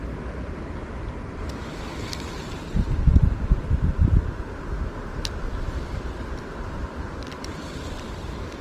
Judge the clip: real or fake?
real